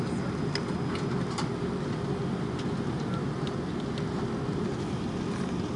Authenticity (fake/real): real